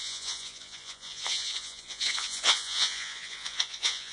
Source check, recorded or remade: remade